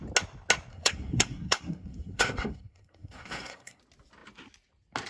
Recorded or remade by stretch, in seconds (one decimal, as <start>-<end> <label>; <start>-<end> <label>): 0.0-0.7 recorded; 0.7-3.8 remade; 3.8-5.1 recorded